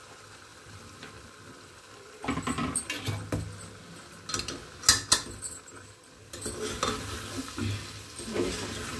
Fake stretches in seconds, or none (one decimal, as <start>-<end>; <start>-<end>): none